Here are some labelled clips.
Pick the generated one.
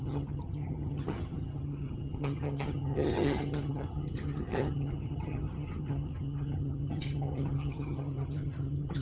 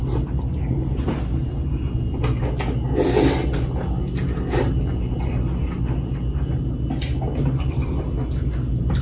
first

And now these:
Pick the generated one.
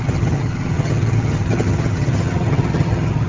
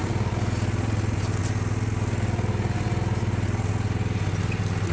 first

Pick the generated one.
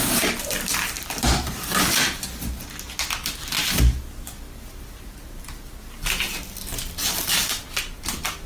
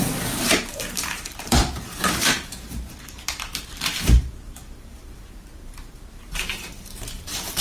second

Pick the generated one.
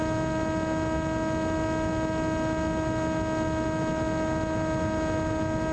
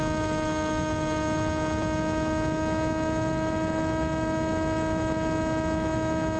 second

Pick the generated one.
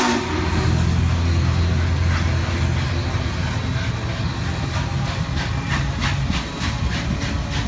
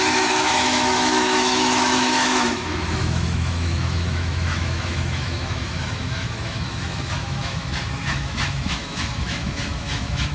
second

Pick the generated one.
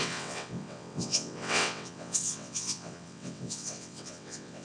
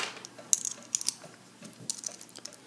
first